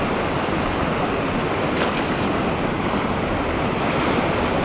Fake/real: real